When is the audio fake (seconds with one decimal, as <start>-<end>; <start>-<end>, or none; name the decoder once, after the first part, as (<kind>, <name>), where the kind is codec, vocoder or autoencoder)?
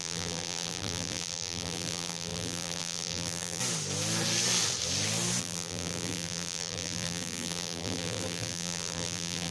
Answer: 0.0-3.6 (vocoder, BigVGAN v2); 5.4-9.5